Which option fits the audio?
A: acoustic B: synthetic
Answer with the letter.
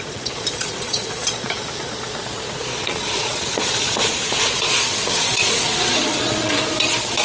B